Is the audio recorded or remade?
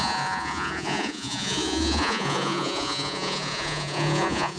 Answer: remade